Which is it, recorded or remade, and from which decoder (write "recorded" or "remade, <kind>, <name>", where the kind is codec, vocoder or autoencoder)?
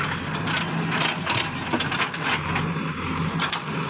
recorded